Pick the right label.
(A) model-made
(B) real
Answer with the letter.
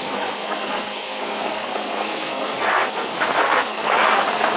A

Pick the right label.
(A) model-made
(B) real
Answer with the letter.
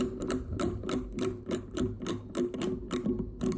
B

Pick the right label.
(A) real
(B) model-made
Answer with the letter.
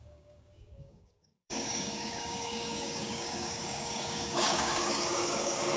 B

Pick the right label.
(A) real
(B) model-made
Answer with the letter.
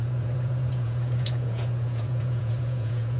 B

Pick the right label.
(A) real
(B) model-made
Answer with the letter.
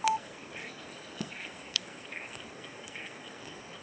B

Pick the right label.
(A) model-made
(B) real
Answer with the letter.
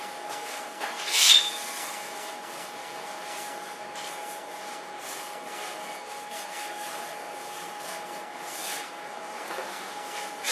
A